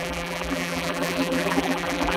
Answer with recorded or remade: remade